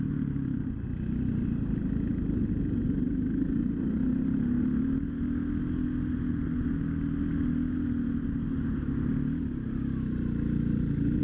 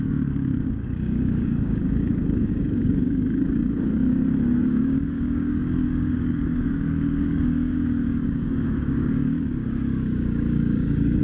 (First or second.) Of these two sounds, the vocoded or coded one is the second